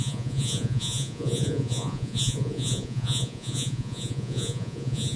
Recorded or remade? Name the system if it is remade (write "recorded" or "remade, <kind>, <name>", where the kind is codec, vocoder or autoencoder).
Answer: remade, vocoder, Vocos